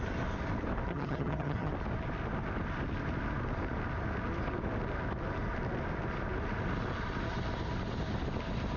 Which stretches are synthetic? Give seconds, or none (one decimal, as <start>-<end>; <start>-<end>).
0.9-1.7

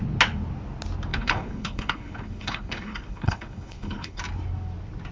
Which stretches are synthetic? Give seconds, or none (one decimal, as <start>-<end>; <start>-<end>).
1.1-4.2